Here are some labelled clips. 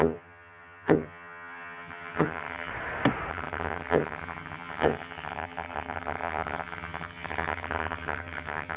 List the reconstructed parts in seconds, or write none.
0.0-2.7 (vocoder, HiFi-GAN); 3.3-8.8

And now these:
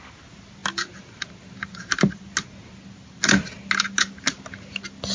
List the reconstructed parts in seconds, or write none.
none

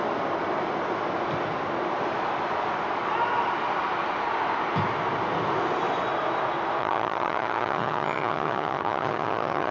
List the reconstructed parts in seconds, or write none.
6.8-9.7 (vocoder, HiFi-GAN)

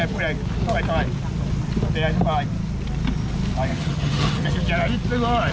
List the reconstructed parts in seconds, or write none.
3.7-4.5 (vocoder, HiFi-GAN)